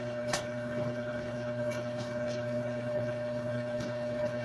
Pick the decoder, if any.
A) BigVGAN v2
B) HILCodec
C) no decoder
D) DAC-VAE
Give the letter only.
B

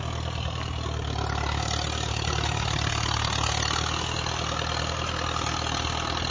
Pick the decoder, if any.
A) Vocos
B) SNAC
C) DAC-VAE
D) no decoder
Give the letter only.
D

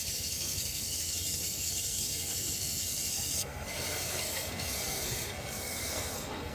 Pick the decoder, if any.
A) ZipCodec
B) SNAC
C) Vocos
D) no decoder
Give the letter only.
B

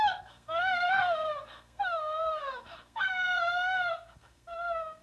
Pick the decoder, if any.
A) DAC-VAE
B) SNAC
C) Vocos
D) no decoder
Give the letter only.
B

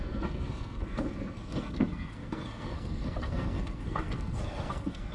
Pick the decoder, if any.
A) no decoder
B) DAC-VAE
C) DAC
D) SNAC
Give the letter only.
D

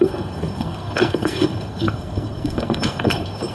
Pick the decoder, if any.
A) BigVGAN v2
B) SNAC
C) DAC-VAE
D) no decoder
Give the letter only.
B